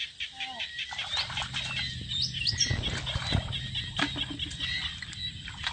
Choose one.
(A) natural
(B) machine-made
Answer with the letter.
B